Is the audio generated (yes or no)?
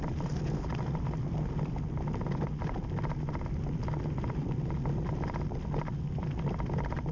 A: no